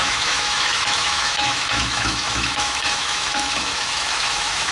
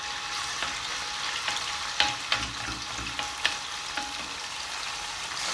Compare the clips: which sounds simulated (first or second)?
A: first